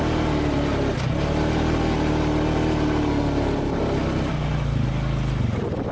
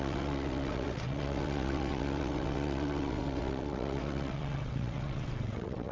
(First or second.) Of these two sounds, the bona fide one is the first